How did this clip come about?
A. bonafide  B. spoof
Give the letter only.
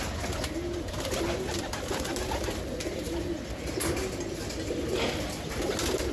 A